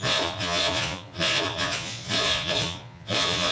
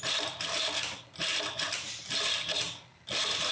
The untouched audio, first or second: second